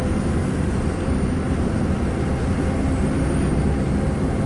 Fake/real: real